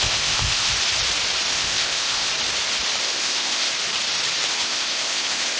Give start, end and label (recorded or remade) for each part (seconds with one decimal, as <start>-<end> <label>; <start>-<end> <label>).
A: 0.0-0.7 remade; 0.7-1.5 recorded; 1.5-2.3 remade; 2.3-3.0 recorded; 3.0-3.7 remade; 3.7-4.5 recorded; 4.5-5.6 remade